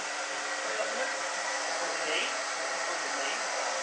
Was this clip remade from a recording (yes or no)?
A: no